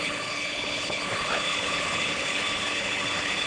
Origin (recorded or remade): remade